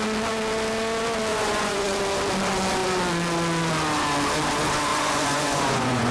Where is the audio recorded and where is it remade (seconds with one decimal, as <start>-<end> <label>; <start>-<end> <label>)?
0.0-1.3 recorded; 1.3-2.0 remade; 2.0-4.9 recorded; 4.9-6.1 remade